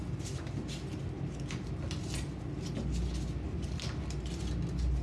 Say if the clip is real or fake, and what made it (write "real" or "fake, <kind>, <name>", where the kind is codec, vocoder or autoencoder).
real